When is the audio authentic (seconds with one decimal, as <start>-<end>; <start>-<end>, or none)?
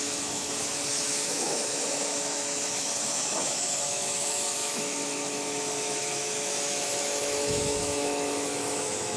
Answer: none